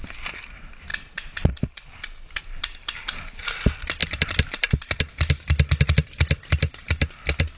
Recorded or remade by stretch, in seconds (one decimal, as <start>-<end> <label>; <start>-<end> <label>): 0.0-7.6 recorded